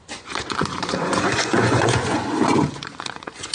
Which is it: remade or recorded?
remade